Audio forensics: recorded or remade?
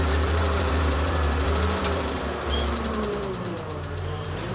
remade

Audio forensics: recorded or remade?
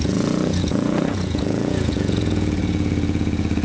remade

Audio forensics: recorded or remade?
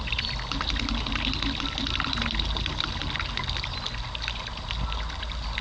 recorded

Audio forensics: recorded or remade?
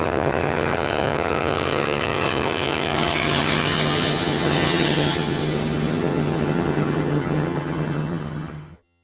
remade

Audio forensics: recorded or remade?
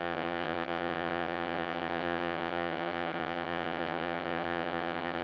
remade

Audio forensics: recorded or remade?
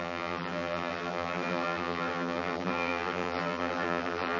remade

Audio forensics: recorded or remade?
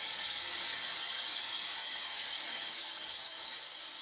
remade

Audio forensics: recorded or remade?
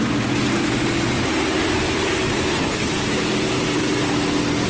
recorded